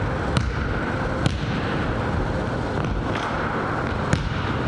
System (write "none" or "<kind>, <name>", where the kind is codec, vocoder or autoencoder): none